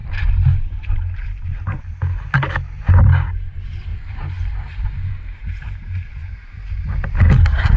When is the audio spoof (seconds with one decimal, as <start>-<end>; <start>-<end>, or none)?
0.0-1.8; 3.9-7.8